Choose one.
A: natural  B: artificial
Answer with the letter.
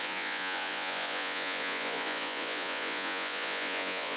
B